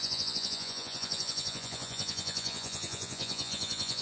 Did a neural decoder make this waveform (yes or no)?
yes